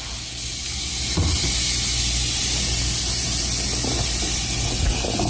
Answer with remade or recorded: recorded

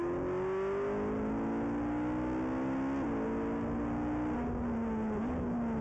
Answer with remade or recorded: recorded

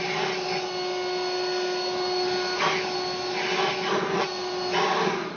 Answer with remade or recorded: recorded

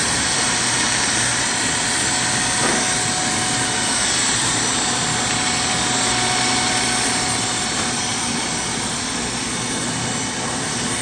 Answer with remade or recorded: recorded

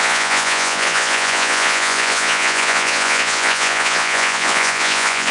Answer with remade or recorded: remade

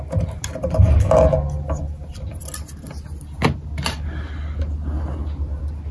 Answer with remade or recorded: recorded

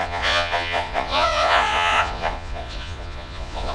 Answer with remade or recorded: remade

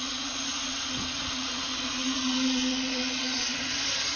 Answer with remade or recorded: remade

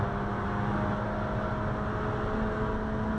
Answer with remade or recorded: recorded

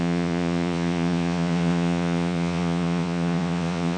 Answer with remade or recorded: remade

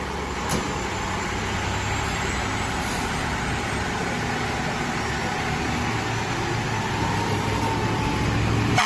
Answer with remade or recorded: recorded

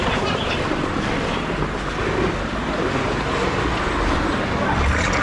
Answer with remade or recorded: recorded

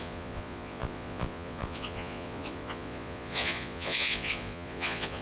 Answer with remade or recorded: remade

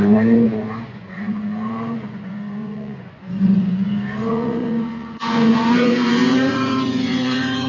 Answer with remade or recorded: remade